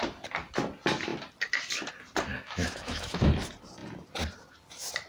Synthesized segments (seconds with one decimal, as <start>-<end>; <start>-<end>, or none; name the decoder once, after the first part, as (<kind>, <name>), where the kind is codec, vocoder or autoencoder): 2.3-3.3 (autoencoder, DAC-VAE)